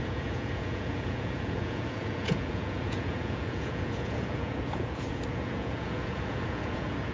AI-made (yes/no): yes